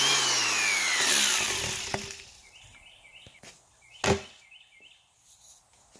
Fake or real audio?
real